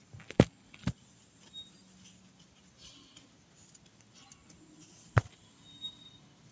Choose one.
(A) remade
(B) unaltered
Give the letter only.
B